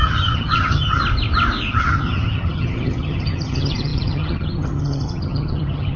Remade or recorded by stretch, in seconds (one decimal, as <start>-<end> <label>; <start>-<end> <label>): 0.0-1.0 remade; 1.0-1.7 recorded; 1.7-6.0 remade